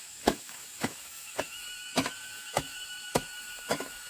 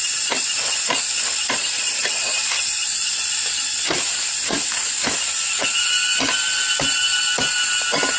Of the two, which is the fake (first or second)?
first